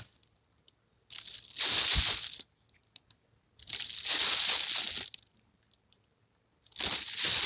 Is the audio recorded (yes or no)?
yes